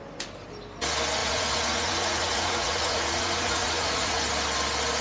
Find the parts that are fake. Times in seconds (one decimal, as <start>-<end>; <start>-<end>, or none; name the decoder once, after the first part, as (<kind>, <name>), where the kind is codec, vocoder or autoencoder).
1.2-4.2 (vocoder, Vocos)